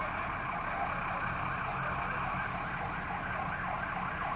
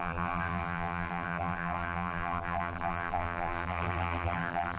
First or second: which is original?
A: first